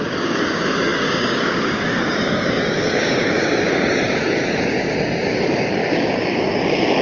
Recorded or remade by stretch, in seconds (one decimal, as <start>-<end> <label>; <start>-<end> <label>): 0.0-7.0 remade